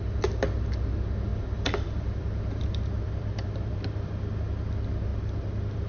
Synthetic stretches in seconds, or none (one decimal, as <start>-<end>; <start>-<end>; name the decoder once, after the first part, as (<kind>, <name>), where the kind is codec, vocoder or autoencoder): 1.3-4.1 (vocoder, BigVGAN v2); 5.1-5.9